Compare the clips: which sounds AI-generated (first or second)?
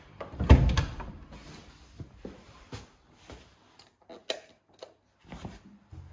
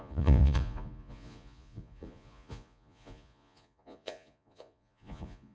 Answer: second